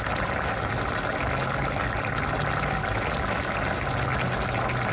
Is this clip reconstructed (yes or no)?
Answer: no